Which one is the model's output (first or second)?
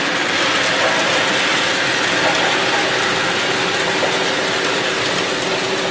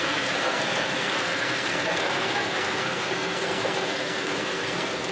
second